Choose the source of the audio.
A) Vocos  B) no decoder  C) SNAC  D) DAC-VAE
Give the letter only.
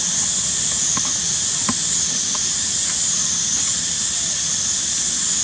B